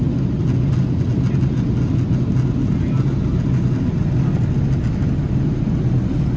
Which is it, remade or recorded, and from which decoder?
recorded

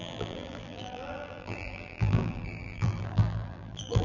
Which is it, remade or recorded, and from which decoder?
remade, vocoder, BigVGAN v2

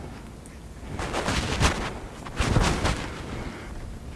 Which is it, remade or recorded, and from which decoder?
recorded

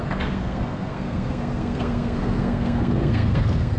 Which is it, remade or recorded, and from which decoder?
remade, codec, SNAC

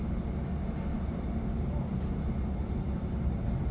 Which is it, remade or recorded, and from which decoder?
recorded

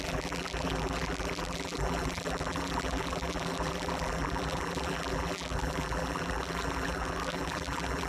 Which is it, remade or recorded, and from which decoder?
remade, vocoder, BigVGAN v2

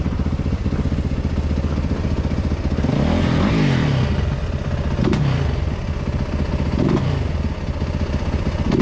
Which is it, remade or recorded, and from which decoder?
recorded